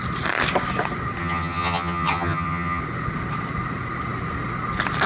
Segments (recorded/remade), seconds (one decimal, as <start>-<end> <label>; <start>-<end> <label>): 0.0-1.2 recorded; 1.2-2.8 remade; 2.8-5.1 recorded